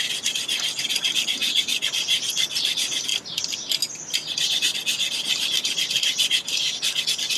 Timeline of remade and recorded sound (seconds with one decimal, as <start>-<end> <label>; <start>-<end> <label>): 0.0-7.4 recorded